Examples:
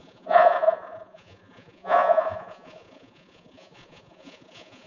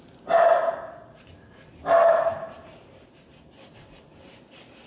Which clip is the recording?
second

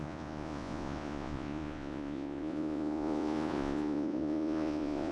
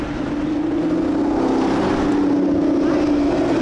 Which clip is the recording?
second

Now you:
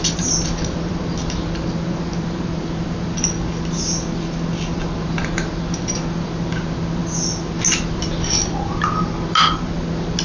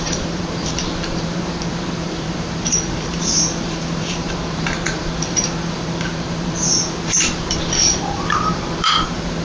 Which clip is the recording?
first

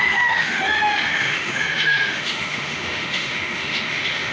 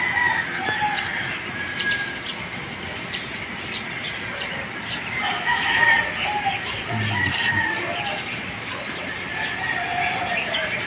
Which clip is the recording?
second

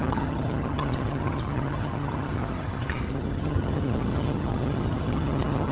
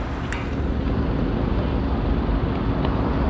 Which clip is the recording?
second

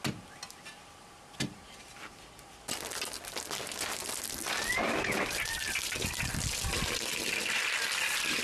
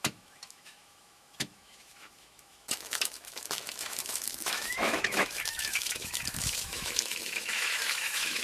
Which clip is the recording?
first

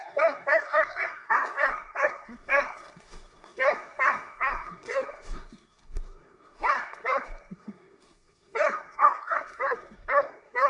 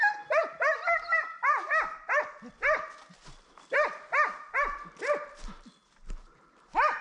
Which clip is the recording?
second